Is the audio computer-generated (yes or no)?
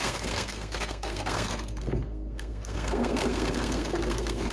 yes